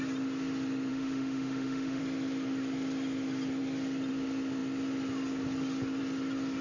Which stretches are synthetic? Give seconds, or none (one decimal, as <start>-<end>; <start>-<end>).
0.9-2.0